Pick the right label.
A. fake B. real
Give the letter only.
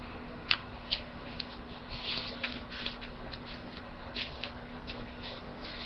A